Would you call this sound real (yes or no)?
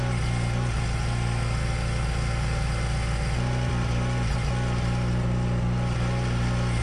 yes